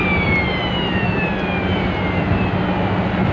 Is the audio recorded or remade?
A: recorded